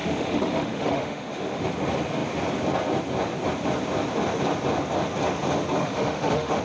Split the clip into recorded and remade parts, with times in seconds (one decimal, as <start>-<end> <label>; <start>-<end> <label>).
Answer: 0.0-1.6 remade; 1.6-5.8 recorded; 5.8-6.6 remade